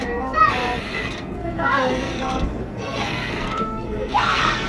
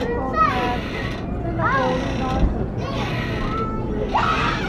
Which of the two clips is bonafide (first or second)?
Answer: second